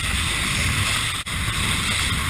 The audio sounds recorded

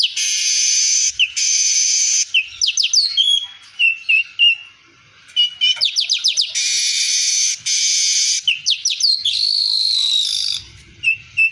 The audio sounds recorded